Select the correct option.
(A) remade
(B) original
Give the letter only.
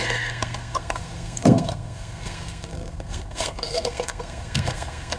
A